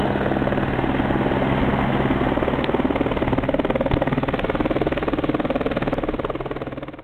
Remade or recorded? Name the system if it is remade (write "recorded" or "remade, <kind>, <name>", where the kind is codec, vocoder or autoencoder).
recorded